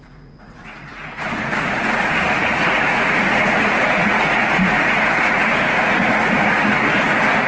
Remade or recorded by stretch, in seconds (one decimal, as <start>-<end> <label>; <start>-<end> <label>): 0.0-7.5 remade

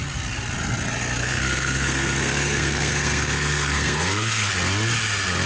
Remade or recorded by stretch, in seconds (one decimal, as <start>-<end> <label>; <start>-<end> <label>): 0.0-1.2 recorded; 1.2-4.5 remade; 4.5-5.5 recorded

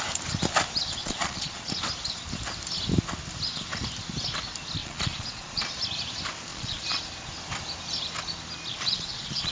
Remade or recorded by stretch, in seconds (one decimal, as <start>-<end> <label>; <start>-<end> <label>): 0.0-1.0 recorded; 1.0-1.7 remade; 1.7-4.8 recorded; 4.8-5.6 remade; 5.6-6.5 recorded; 6.5-7.0 remade; 7.0-8.7 recorded; 8.7-9.5 remade

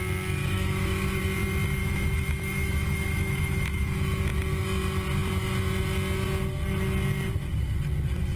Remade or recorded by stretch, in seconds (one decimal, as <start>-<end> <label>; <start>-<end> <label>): 0.0-0.4 recorded; 0.4-1.2 remade; 1.2-1.8 recorded; 1.8-4.2 remade; 4.2-8.4 recorded

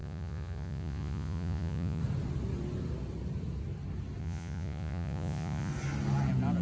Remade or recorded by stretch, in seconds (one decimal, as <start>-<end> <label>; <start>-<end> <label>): 0.0-2.0 remade; 2.0-4.2 recorded; 4.2-5.7 remade; 5.7-6.6 recorded